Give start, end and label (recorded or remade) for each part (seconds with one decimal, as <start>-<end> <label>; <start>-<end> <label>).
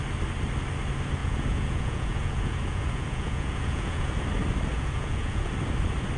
0.0-1.2 recorded; 1.2-4.1 remade; 4.1-4.7 recorded; 4.7-5.5 remade; 5.5-6.2 recorded